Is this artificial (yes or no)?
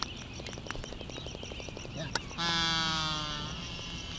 no